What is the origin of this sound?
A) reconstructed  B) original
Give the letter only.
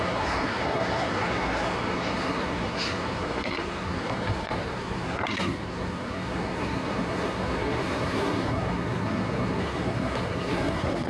A